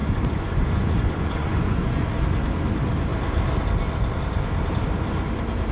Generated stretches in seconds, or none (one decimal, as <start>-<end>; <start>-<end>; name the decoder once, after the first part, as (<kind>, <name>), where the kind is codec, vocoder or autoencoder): 0.0-2.1 (vocoder, Vocos)